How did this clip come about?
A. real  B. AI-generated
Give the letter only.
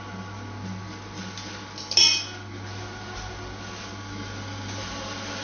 A